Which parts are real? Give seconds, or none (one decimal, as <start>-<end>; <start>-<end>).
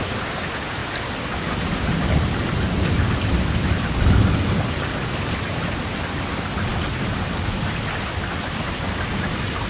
0.0-9.7